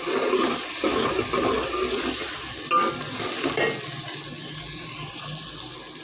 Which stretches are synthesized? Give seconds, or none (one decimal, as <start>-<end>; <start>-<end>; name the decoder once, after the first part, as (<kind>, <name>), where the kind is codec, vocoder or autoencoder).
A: none